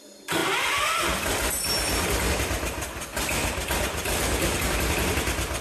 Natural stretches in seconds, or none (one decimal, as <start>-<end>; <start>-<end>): 0.0-5.6